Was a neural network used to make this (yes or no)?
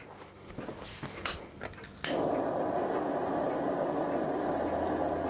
no